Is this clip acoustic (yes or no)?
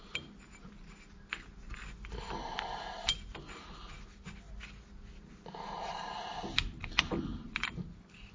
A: yes